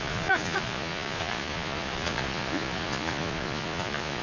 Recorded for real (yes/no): no